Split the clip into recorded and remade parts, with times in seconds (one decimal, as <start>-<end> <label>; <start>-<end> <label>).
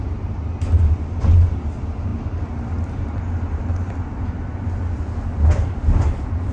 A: 0.0-6.5 recorded